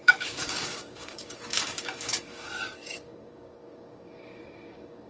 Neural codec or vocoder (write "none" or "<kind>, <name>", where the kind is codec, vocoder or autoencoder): codec, DAC